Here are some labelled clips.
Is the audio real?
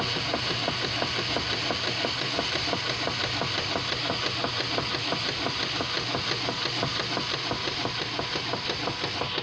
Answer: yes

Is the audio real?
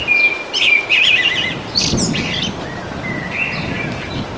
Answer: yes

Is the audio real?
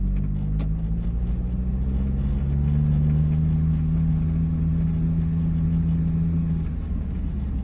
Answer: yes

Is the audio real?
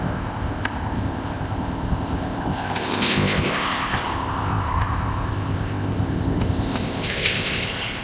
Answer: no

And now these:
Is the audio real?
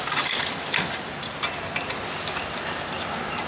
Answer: yes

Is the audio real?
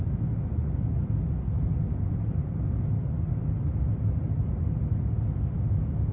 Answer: yes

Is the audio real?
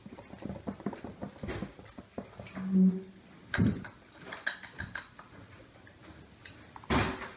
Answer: yes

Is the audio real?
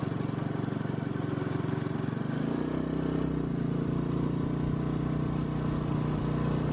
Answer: yes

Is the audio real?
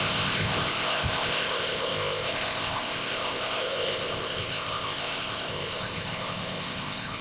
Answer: no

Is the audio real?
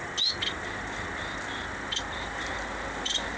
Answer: yes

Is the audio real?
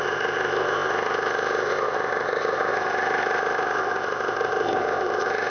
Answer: no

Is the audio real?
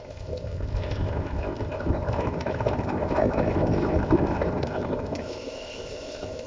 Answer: no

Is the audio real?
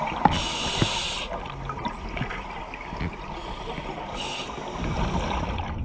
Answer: yes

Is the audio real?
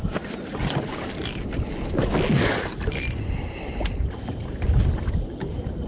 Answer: yes